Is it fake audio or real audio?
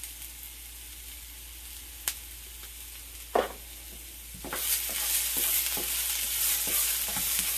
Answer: real